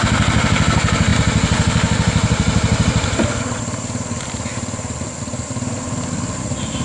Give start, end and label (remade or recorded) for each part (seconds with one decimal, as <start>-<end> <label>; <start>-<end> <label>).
0.0-6.8 recorded